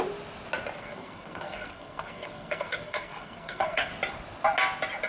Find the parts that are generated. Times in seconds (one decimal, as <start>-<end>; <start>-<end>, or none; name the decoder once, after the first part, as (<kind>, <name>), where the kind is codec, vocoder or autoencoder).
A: 0.8-3.9 (codec, SNAC)